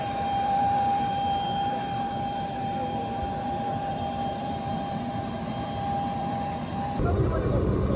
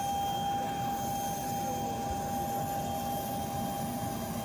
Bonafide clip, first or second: second